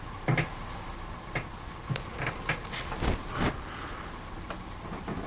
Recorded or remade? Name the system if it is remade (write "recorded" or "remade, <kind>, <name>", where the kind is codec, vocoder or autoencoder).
recorded